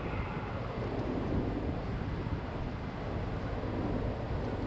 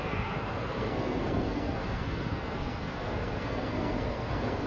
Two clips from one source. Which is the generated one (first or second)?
second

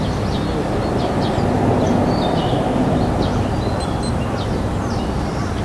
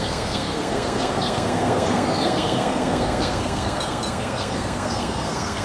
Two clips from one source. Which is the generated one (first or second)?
second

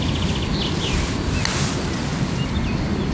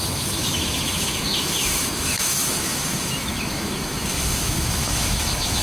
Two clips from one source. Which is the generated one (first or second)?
second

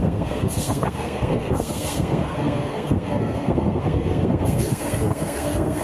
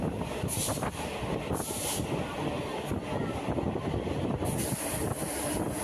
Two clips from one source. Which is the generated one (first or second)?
first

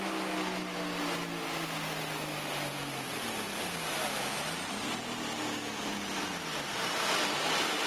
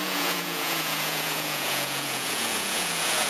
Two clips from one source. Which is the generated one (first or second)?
second